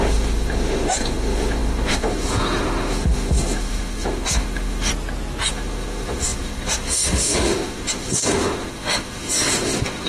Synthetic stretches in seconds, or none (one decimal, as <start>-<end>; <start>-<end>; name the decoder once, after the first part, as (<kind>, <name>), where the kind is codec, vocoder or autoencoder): 0.0-4.9 (autoencoder, DAC-VAE); 5.5-10.1